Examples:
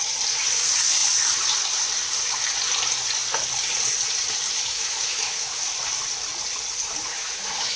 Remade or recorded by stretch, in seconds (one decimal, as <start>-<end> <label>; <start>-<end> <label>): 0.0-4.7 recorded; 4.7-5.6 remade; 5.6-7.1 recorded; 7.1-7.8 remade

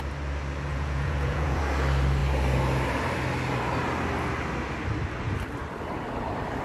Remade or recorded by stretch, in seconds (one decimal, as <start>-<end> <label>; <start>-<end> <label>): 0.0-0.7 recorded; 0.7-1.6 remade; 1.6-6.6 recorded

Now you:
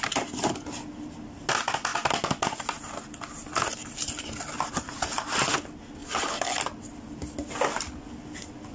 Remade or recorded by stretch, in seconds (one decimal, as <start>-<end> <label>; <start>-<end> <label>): 0.0-8.7 recorded